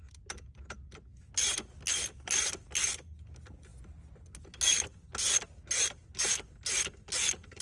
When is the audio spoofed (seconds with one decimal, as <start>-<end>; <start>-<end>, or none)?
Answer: none